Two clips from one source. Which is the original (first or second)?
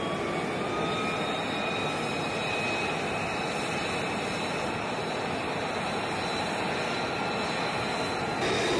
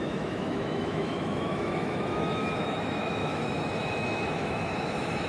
first